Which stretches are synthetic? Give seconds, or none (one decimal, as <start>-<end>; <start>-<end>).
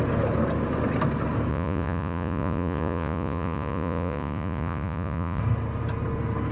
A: 1.5-5.4